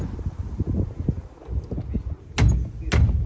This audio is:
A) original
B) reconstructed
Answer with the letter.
A